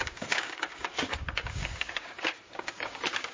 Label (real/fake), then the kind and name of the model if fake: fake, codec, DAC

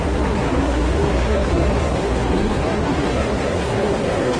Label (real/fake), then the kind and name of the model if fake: fake, codec, SNAC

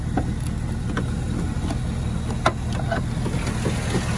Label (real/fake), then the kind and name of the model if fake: real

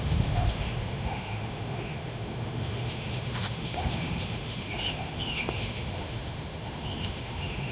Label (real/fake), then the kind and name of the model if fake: fake, autoencoder, DAC-VAE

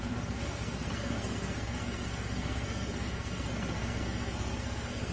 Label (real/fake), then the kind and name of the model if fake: fake, codec, SNAC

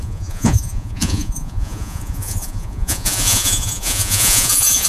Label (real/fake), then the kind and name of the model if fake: fake, vocoder, Vocos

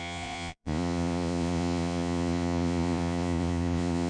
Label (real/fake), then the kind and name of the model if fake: fake, vocoder, Vocos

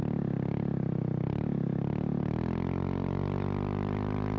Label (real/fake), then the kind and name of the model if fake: real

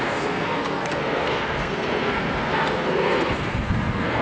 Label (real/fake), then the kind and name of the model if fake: fake, codec, SNAC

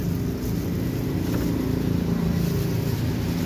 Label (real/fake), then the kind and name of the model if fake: real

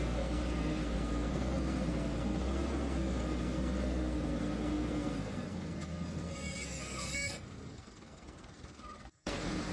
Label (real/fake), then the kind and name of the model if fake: fake, codec, SNAC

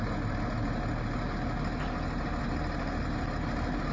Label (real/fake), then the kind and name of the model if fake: real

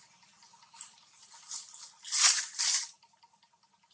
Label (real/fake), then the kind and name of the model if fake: real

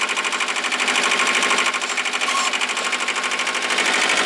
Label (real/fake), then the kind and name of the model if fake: real